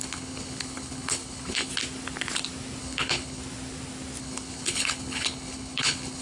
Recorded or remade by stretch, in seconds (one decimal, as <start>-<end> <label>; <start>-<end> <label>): 0.0-1.7 remade; 1.7-2.8 recorded; 2.8-3.4 remade; 3.4-4.2 recorded; 4.2-6.2 remade